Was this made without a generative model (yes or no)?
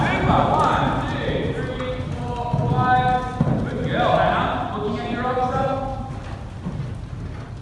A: yes